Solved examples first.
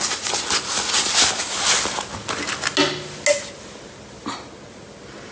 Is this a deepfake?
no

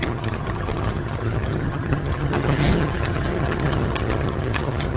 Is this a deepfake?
yes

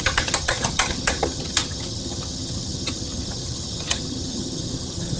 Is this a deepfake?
yes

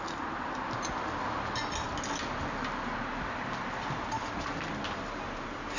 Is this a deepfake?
no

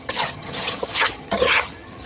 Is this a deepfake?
yes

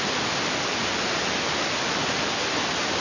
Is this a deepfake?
no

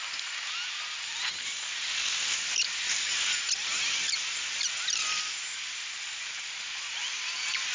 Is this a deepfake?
no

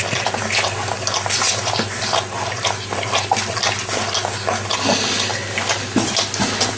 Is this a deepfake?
no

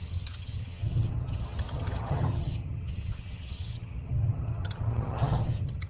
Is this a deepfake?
yes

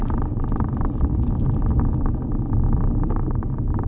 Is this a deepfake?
no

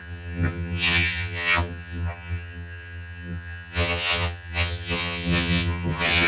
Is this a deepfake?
yes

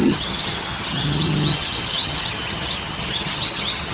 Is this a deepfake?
yes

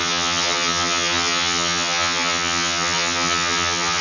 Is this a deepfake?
yes